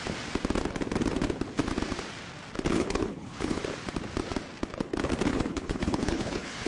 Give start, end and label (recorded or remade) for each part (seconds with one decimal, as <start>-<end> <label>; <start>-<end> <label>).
0.0-2.7 recorded; 2.7-3.6 remade; 3.6-5.3 recorded; 5.3-6.7 remade